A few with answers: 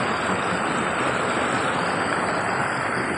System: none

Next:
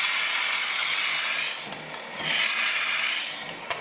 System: none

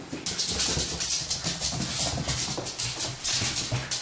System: none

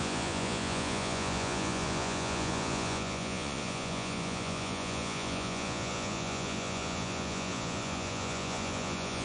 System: vocoder, Vocos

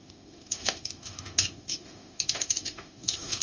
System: autoencoder, DAC-VAE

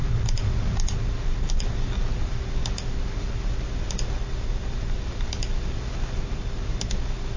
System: none